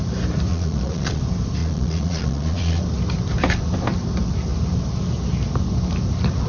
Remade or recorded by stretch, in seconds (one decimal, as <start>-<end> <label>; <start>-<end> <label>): 0.0-0.5 recorded; 0.5-1.2 remade; 1.2-1.6 recorded; 1.6-2.8 remade; 2.8-6.5 recorded